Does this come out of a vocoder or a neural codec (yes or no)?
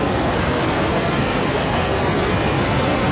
yes